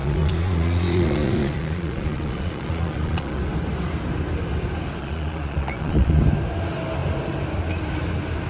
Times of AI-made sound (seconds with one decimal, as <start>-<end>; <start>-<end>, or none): 0.0-3.4; 5.0-6.2